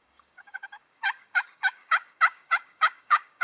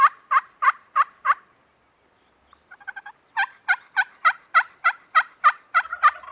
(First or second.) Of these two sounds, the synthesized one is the first